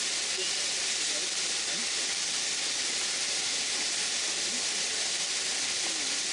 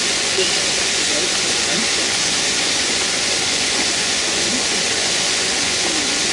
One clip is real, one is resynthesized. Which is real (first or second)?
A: first